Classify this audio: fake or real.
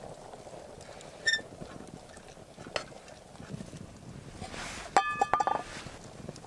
real